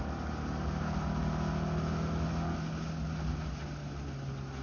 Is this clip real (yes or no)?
yes